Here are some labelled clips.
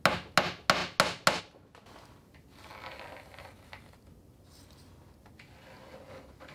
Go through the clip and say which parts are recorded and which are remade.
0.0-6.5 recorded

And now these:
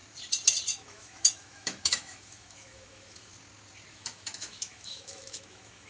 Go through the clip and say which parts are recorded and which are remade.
0.0-0.7 recorded; 0.7-3.3 remade; 3.3-3.9 recorded; 3.9-5.9 remade

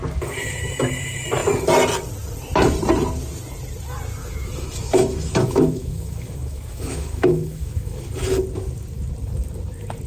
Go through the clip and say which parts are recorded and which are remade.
0.0-4.2 recorded; 4.2-8.0 remade; 8.0-10.1 recorded

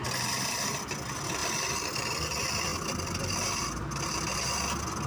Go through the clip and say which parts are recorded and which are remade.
0.0-5.1 recorded

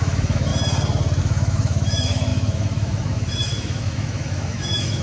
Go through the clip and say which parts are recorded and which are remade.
0.0-0.5 remade; 0.5-1.2 recorded; 1.2-5.0 remade